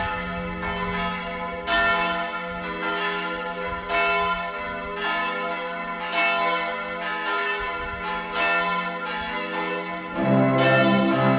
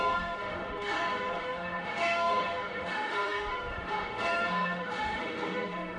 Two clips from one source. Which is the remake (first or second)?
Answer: second